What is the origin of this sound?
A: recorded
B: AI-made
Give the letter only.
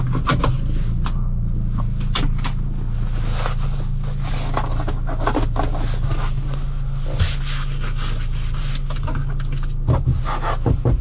A